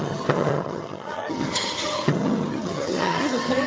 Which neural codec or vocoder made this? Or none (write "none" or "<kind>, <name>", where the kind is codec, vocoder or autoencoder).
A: vocoder, HiFi-GAN